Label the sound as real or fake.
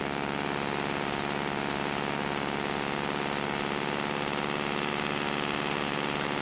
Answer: real